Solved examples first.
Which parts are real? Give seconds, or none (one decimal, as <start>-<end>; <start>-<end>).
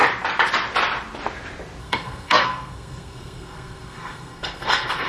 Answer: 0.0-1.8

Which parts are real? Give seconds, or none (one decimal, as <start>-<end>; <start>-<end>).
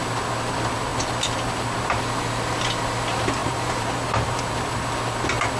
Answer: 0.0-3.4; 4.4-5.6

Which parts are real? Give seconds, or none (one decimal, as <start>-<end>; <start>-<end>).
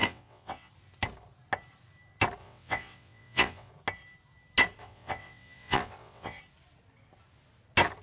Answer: 0.7-2.4; 3.7-4.8; 6.4-8.0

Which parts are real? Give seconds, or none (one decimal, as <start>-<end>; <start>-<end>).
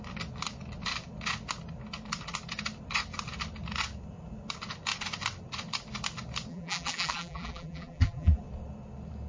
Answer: 0.0-6.5; 8.4-9.3